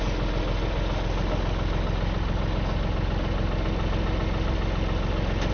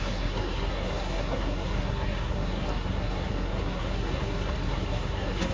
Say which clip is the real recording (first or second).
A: first